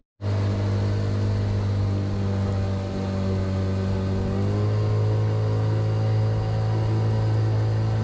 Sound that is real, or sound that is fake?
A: real